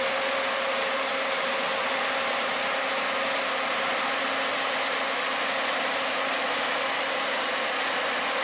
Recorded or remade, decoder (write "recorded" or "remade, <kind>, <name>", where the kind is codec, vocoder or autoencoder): recorded